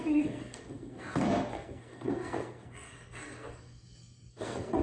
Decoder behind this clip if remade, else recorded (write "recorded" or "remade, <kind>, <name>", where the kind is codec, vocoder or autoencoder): remade, codec, SNAC